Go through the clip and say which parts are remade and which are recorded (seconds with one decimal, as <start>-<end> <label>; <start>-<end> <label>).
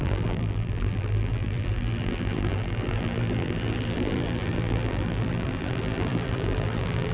0.0-7.1 remade